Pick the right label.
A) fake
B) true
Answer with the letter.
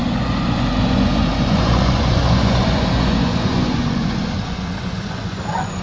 A